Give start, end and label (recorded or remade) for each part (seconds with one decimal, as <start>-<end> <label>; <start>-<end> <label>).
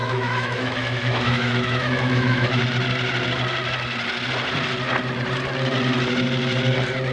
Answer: 0.0-2.6 remade; 2.6-7.1 recorded